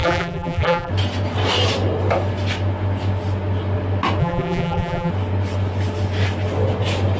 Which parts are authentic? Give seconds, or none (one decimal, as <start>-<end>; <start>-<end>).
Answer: 0.9-4.2; 5.1-7.2